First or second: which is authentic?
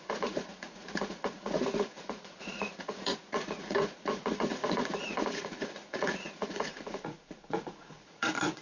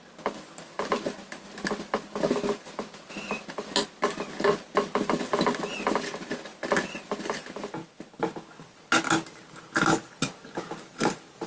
second